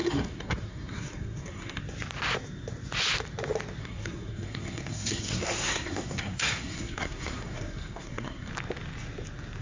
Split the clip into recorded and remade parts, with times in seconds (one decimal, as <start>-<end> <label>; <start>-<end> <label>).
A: 0.0-1.8 remade; 1.8-3.8 recorded; 3.8-8.5 remade; 8.5-9.6 recorded